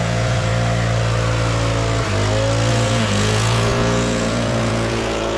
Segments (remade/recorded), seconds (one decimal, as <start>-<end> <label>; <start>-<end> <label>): 0.0-0.5 remade; 0.5-2.7 recorded; 2.7-5.4 remade